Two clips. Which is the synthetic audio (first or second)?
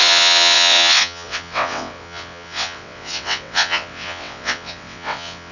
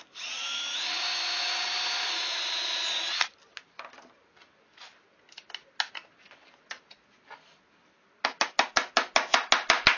first